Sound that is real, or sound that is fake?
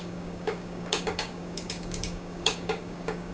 fake